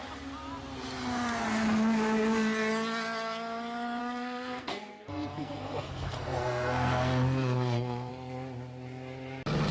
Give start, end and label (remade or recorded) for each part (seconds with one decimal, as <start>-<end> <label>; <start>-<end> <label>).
0.0-4.0 recorded; 4.0-8.1 remade; 8.1-9.7 recorded